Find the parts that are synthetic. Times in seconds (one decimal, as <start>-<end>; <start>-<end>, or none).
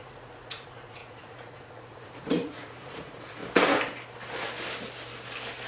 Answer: 0.0-3.4